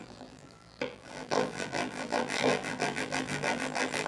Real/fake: fake